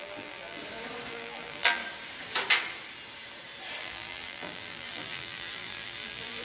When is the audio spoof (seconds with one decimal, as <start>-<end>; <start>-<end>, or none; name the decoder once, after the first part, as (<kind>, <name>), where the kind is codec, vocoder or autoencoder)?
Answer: 0.0-0.6 (vocoder, BigVGAN v2); 1.1-1.8; 3.8-6.4